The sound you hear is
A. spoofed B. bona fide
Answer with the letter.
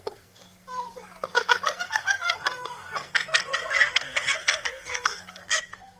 A